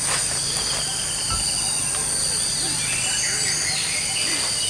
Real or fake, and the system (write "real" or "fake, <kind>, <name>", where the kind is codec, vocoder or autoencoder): real